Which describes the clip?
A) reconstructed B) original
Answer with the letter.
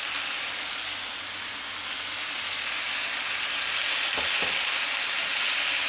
B